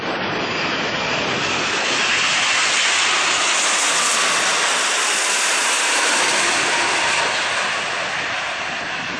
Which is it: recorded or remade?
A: recorded